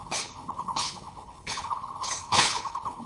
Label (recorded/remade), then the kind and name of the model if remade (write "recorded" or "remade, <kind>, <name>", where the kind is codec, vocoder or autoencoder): remade, codec, HILCodec